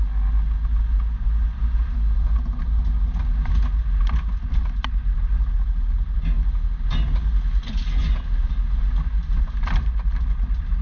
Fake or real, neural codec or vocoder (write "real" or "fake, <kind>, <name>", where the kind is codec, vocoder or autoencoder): real